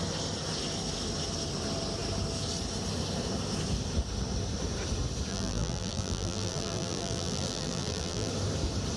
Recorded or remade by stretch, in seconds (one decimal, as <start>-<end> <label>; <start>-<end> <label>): 0.0-5.3 recorded; 5.3-8.3 remade; 8.3-9.0 recorded